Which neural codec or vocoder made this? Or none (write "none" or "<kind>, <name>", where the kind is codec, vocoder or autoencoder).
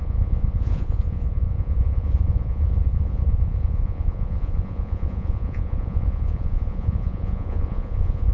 vocoder, Vocos